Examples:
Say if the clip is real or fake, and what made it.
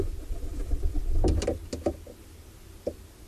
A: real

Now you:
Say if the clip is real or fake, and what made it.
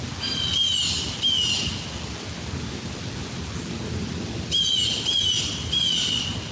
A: real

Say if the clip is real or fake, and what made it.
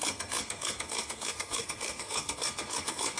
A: fake, codec, SNAC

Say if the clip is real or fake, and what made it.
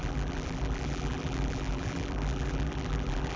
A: fake, vocoder, BigVGAN v2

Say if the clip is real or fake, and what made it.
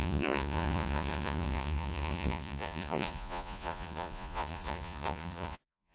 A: fake, vocoder, Vocos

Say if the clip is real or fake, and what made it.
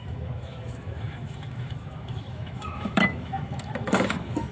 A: fake, autoencoder, DAC-VAE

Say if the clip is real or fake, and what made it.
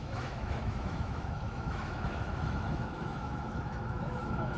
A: fake, autoencoder, DAC-VAE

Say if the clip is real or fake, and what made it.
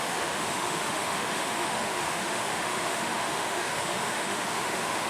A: fake, autoencoder, DAC-VAE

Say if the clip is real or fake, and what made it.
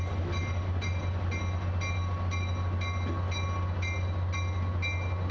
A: real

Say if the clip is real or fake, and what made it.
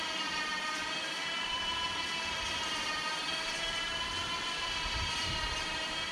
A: fake, vocoder, BigVGAN v2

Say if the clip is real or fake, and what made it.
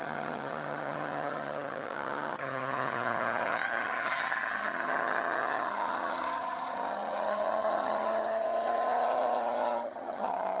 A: fake, vocoder, HiFi-GAN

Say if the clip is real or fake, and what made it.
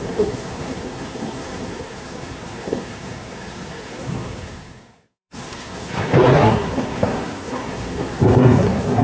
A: fake, codec, SNAC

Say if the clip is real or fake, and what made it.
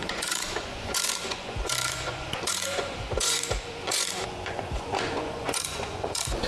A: fake, vocoder, Vocos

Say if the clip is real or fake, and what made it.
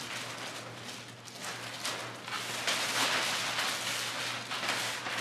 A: real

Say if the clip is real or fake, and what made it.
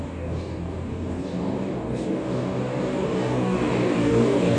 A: fake, codec, DAC